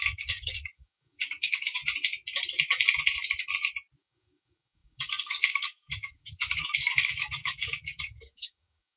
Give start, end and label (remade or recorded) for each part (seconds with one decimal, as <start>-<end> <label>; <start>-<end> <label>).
0.0-1.8 remade; 1.8-4.0 recorded; 4.0-9.0 remade